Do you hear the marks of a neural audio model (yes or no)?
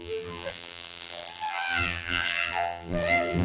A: yes